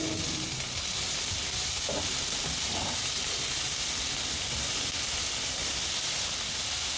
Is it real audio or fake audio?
real